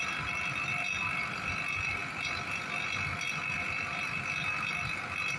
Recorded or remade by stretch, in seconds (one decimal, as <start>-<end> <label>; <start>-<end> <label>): 0.0-5.4 recorded